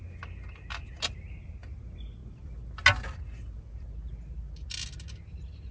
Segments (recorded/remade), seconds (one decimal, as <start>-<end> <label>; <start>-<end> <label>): 0.0-5.7 recorded